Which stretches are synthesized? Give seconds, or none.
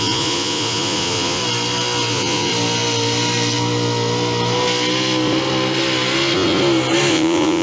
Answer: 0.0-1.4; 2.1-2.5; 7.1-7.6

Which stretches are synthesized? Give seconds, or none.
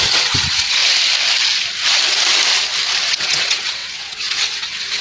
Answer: 0.0-0.8; 3.1-5.0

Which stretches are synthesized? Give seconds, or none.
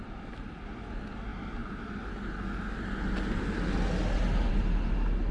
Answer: none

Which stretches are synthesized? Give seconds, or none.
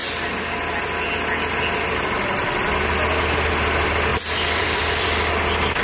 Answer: 4.1-5.3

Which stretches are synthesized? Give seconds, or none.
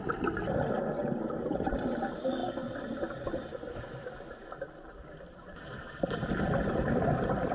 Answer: 1.0-1.7; 4.0-7.5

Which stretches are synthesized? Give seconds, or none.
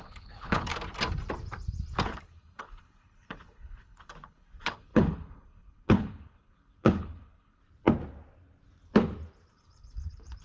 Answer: 0.0-0.7; 2.0-7.6; 9.5-10.4